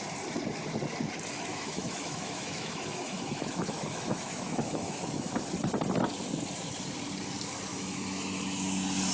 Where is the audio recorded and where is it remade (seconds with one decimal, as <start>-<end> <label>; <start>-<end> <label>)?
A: 0.0-1.5 recorded; 1.5-5.4 remade; 5.4-7.7 recorded; 7.7-8.4 remade; 8.4-9.1 recorded